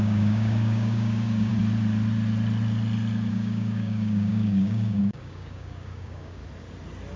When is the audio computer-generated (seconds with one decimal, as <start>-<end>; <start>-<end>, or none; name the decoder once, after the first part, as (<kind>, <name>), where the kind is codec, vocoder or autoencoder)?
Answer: 0.0-1.5 (codec, DAC); 3.3-6.4